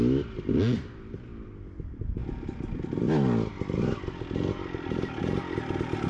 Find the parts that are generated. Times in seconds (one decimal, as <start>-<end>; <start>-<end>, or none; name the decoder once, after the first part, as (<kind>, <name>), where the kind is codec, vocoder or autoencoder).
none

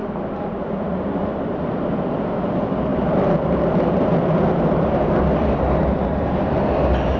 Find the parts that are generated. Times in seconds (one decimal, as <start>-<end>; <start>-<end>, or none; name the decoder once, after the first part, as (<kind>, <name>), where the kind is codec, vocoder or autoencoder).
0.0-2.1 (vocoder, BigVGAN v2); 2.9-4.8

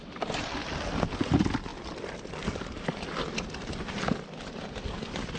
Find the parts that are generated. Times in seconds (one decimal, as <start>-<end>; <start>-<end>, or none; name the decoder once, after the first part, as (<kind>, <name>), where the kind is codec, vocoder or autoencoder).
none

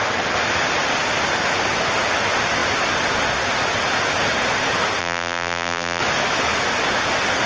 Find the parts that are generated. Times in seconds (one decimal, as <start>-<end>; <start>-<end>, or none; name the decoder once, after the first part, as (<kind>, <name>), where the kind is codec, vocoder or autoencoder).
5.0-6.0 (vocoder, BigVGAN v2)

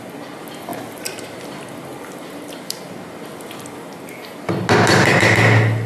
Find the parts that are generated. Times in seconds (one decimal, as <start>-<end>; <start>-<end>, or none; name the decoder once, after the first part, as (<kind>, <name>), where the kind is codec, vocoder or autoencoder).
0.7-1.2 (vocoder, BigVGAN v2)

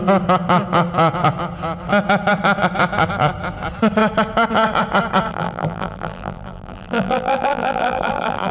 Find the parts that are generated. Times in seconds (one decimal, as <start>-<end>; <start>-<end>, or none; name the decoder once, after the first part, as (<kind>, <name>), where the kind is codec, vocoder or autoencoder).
5.3-8.5 (vocoder, BigVGAN v2)

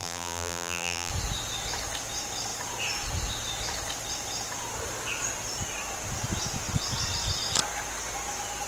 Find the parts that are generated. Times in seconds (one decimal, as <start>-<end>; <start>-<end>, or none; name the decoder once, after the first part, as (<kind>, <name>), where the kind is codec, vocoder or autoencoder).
0.0-1.1 (vocoder, BigVGAN v2)